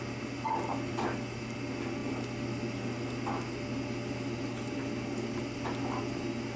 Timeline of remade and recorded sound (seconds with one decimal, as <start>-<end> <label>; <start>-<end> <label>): 0.0-6.6 recorded